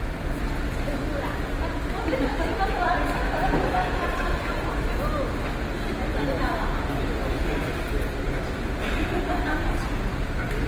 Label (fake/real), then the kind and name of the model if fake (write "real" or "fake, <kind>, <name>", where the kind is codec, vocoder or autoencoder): real